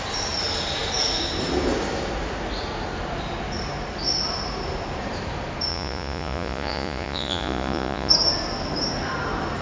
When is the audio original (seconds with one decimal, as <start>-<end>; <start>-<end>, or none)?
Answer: 0.0-5.7; 8.1-9.6